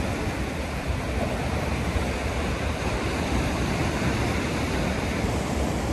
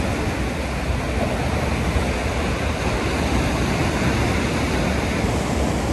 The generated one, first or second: first